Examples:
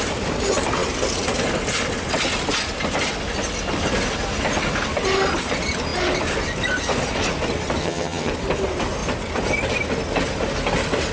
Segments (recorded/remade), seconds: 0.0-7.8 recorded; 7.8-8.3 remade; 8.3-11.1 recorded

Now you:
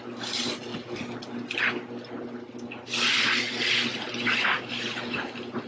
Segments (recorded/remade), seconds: 0.0-5.7 recorded

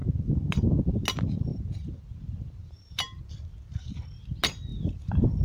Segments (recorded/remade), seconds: 0.0-1.5 recorded; 1.5-3.2 remade; 3.2-4.7 recorded; 4.7-5.4 remade

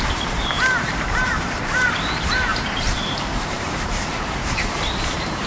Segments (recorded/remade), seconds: 0.0-5.5 remade

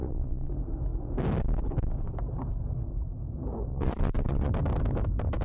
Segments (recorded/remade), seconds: 0.0-0.5 remade; 0.5-3.7 recorded; 3.7-4.5 remade; 4.5-5.4 recorded

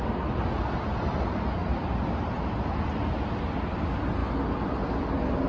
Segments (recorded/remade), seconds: 0.0-1.6 recorded; 1.6-2.8 remade; 2.8-5.5 recorded